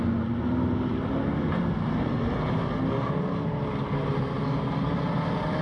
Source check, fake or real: real